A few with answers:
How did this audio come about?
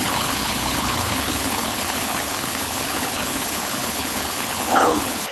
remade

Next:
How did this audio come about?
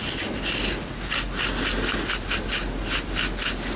recorded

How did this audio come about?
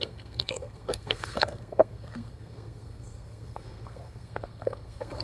remade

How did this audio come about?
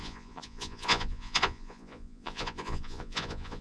remade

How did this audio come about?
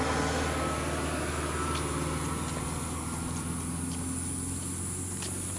recorded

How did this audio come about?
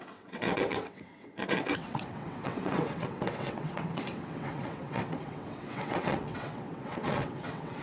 remade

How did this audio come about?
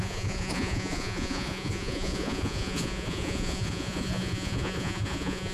remade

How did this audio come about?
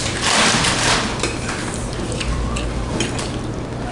recorded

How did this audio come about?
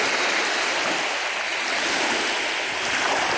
recorded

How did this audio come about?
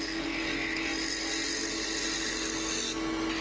recorded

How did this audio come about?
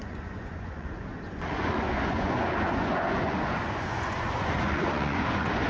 remade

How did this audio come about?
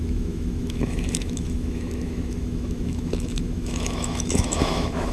remade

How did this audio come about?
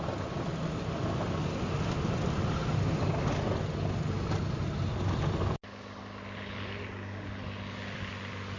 recorded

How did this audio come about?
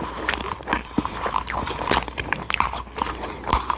remade